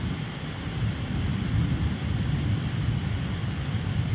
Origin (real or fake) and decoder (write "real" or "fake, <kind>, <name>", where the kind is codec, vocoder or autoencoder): real